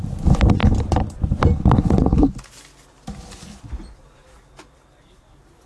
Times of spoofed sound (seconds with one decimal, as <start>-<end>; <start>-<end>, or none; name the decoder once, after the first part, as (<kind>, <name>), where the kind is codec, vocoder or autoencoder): 0.0-0.6 (vocoder, BigVGAN v2); 4.0-5.7